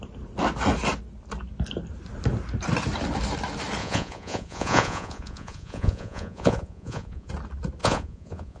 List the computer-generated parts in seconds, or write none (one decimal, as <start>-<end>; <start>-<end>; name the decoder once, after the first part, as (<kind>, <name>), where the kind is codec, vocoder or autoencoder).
3.8-7.3 (vocoder, Vocos); 7.8-8.6